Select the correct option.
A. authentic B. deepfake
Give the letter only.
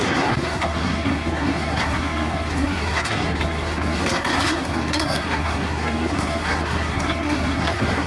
B